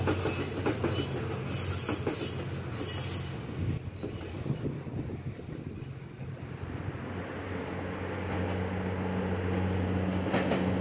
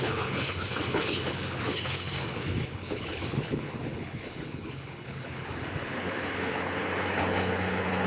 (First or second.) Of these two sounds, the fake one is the second